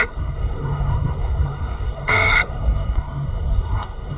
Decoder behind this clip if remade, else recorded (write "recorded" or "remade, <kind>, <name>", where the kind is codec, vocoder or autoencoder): remade, codec, SNAC